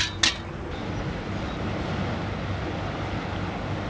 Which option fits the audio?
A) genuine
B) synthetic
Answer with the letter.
A